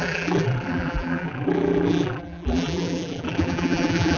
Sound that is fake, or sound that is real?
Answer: fake